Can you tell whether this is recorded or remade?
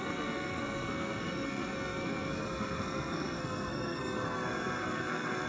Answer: remade